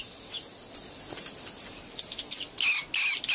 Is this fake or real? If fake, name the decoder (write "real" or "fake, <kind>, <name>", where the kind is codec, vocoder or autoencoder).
real